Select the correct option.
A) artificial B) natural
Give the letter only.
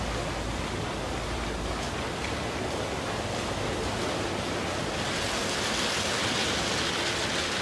B